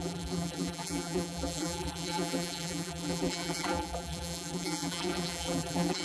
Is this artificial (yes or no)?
yes